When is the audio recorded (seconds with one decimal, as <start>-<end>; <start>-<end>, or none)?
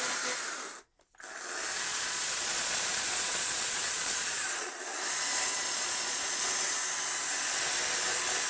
0.0-1.9; 4.8-5.5; 6.4-8.5